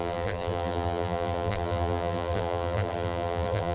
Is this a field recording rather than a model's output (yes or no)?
no